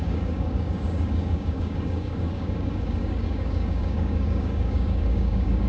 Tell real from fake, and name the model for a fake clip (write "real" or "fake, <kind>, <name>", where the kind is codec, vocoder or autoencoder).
fake, codec, DAC